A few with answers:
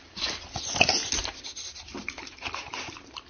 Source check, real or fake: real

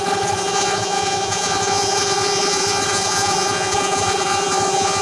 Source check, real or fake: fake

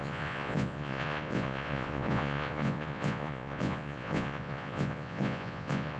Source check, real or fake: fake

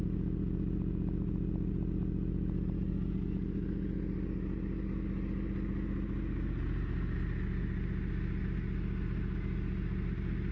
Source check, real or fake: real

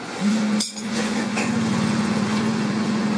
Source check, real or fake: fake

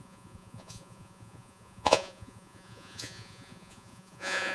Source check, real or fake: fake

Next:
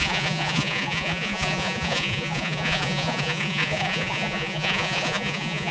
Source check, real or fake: fake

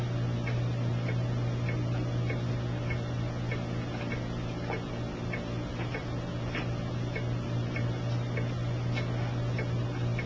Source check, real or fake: real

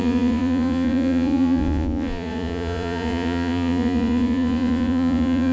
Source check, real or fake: fake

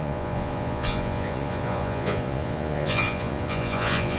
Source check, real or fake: fake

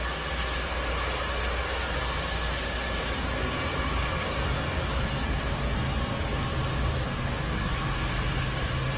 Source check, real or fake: real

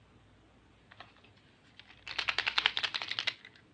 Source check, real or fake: real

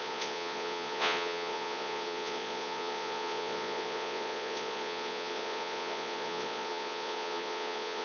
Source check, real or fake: fake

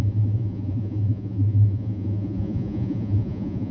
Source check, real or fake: fake